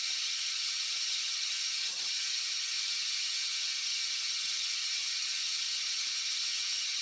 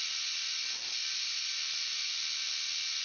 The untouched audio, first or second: second